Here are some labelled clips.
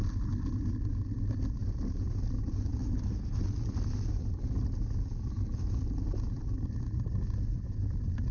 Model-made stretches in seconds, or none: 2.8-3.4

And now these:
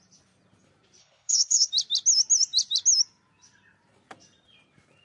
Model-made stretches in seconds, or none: 1.0-1.7

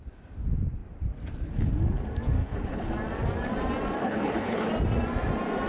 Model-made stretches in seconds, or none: 2.4-2.9; 4.0-4.7

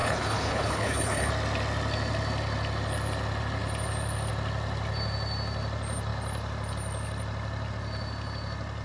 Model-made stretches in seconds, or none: 0.0-1.3